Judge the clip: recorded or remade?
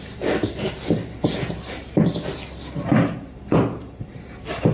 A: recorded